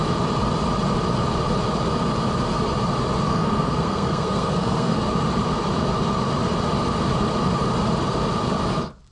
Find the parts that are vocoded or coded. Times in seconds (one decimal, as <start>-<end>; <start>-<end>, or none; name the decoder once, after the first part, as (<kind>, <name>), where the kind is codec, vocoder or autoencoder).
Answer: 3.3-5.0 (codec, SNAC)